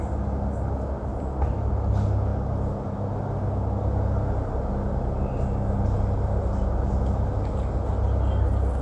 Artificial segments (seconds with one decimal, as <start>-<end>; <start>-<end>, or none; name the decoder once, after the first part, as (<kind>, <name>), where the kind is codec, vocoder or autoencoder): 1.1-1.7 (vocoder, BigVGAN v2)